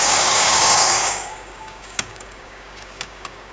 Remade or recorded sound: remade